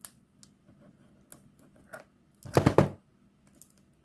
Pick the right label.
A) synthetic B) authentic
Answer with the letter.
B